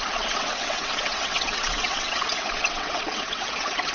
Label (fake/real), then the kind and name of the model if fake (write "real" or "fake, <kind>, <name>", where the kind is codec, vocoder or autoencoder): fake, vocoder, WaveNeXt